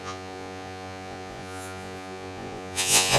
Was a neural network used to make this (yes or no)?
yes